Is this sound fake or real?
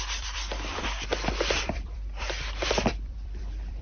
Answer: fake